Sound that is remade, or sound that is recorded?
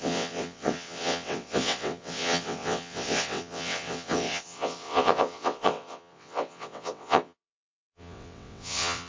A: remade